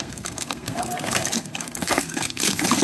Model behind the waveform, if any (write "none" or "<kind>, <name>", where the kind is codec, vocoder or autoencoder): codec, SNAC